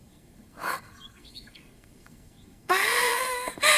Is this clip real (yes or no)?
no